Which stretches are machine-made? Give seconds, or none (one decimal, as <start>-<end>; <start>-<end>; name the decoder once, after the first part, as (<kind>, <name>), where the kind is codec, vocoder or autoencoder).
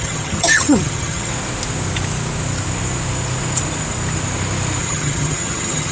0.0-1.3 (vocoder, HiFi-GAN); 4.8-5.9